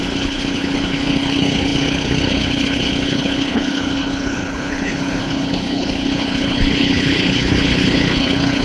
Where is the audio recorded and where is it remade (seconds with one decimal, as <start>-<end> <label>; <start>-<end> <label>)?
0.0-8.6 remade